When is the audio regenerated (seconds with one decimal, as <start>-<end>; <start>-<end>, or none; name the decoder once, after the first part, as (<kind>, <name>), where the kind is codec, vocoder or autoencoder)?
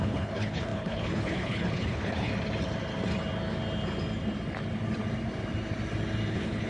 0.0-2.3 (codec, HILCodec); 6.3-6.7